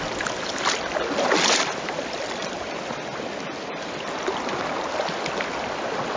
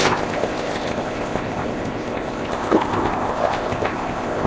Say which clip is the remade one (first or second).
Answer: second